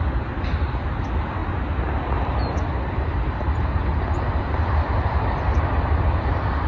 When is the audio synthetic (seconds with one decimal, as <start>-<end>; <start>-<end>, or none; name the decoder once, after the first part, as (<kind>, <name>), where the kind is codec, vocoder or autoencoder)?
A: 0.0-1.4 (vocoder, BigVGAN v2); 4.3-6.7